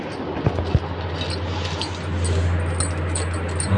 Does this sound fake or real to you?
real